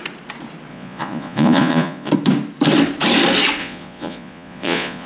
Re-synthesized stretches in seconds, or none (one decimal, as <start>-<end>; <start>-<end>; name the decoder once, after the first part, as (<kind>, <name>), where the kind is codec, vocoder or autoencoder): 0.7-2.1 (vocoder, Vocos); 3.6-5.1